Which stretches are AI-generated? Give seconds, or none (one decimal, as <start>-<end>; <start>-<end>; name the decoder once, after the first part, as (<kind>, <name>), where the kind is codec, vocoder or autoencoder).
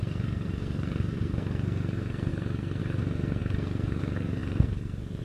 0.0-5.2 (codec, SNAC)